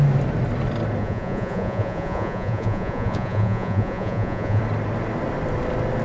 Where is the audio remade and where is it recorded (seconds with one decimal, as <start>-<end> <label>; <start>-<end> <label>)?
0.0-1.0 recorded; 1.0-4.6 remade; 4.6-6.0 recorded